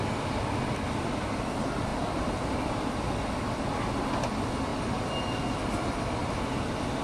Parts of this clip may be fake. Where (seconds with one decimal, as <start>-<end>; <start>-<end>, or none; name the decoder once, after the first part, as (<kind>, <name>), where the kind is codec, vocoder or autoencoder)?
1.9-3.7 (vocoder, BigVGAN v2)